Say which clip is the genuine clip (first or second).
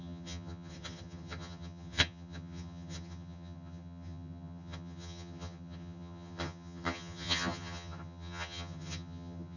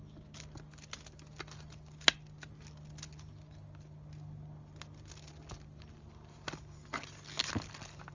second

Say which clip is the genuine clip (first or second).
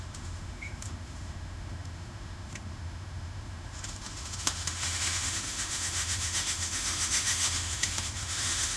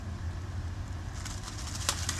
second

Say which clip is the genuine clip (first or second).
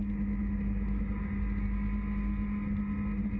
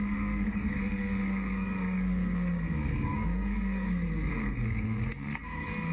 first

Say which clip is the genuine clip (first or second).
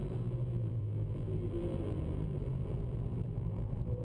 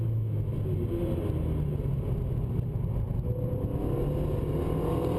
second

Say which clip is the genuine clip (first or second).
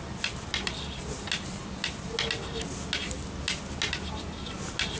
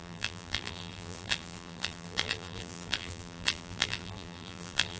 first